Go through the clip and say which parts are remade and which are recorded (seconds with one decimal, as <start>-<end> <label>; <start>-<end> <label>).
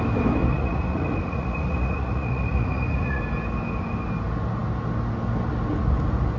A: 0.0-0.4 recorded; 0.4-3.2 remade; 3.2-6.4 recorded